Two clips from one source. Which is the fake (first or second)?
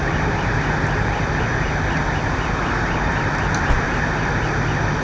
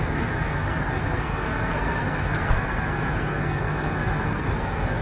second